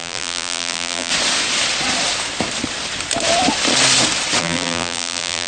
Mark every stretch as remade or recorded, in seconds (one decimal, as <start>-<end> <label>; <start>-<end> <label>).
0.0-1.1 remade; 1.1-4.4 recorded; 4.4-5.5 remade